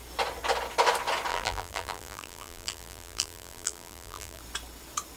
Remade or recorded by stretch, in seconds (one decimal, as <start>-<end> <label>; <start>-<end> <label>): 0.0-1.3 recorded; 1.3-4.4 remade; 4.4-5.2 recorded